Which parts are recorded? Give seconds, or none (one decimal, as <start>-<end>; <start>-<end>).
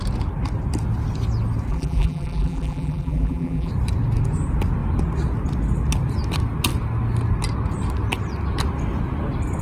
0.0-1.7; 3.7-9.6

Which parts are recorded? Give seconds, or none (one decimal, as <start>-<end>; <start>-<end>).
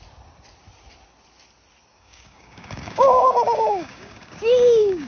0.0-1.9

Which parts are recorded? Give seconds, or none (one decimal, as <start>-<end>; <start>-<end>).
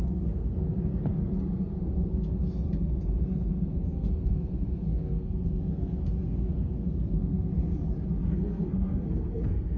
7.6-8.2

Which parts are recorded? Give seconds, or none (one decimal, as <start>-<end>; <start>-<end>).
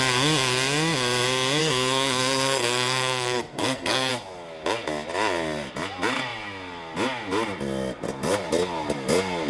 0.0-1.6; 4.1-9.5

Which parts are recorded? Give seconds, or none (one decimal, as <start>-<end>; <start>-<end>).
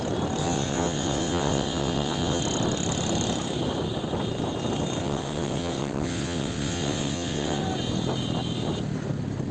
0.0-0.4; 2.4-5.0; 7.6-9.5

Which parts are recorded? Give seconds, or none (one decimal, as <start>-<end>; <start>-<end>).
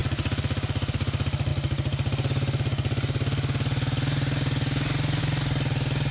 0.0-6.1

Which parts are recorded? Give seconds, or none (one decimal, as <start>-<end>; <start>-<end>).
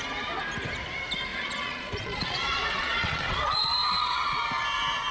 0.0-1.3; 4.4-5.1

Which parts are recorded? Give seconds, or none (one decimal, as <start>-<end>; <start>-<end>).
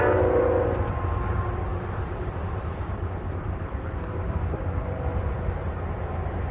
0.0-1.7; 4.6-6.5